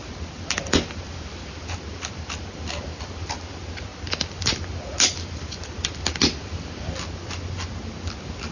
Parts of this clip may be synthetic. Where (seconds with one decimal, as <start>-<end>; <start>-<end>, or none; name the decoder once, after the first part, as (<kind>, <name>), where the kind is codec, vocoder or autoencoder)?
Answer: none